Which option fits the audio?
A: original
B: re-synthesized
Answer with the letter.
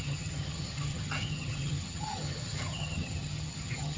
B